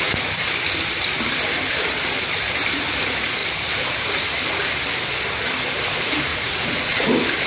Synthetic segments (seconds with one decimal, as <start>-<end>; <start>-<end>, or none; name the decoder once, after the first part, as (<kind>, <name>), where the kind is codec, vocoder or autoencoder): 6.3-7.1 (vocoder, Vocos)